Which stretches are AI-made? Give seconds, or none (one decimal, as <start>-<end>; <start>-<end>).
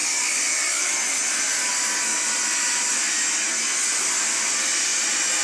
0.0-0.9